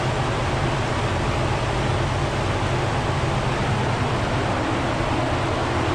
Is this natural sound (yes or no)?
yes